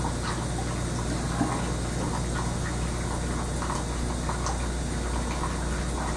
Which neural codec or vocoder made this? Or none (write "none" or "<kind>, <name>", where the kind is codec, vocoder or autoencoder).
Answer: none